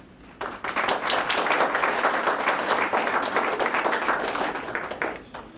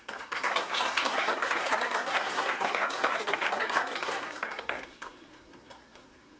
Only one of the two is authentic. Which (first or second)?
first